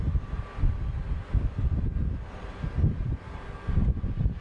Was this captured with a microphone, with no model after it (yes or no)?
yes